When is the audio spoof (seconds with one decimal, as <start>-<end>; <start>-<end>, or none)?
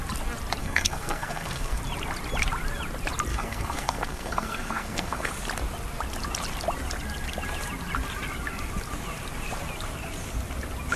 0.6-1.8; 3.3-5.3